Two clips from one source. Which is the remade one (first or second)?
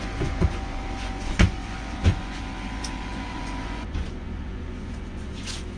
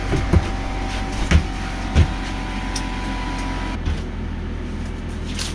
first